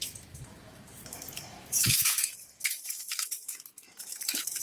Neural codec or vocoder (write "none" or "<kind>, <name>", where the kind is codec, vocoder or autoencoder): autoencoder, DAC-VAE